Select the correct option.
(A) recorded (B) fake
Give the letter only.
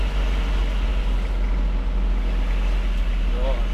A